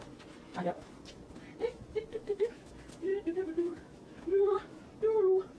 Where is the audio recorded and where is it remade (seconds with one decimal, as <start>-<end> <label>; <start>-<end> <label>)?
0.0-2.1 recorded; 2.1-2.7 remade; 2.7-3.1 recorded; 3.1-4.8 remade; 4.8-5.6 recorded